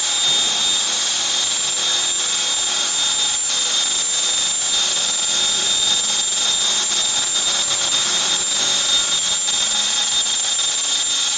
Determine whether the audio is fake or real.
real